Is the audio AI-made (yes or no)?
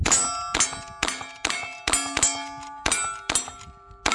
no